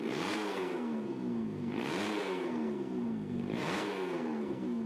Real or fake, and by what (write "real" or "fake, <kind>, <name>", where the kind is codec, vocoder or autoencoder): fake, codec, SNAC